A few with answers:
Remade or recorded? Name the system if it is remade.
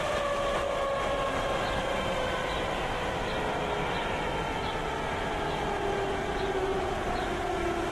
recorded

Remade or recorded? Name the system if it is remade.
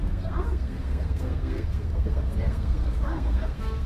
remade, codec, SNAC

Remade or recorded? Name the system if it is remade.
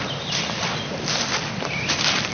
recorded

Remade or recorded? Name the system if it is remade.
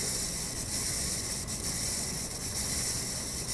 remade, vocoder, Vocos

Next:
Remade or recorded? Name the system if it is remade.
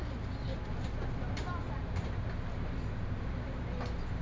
recorded